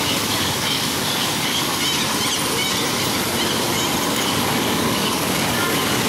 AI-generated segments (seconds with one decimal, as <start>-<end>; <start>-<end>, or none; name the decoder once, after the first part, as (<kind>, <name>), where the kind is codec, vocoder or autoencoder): 0.0-1.8 (codec, DAC); 4.1-6.1